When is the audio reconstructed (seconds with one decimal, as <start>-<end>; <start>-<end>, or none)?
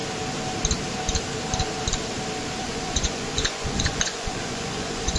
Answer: 2.6-5.2